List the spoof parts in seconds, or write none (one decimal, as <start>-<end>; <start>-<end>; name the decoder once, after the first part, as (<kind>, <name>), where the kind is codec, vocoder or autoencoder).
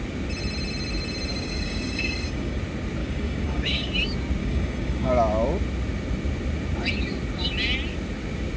1.3-2.6 (codec, DAC); 3.0-3.9; 4.4-5.1